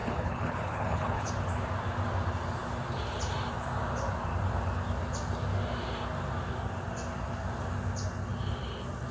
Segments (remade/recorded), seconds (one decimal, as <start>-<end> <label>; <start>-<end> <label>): 0.0-1.3 remade; 1.3-9.1 recorded